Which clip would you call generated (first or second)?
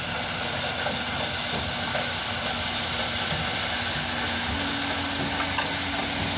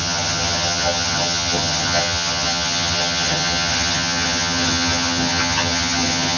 second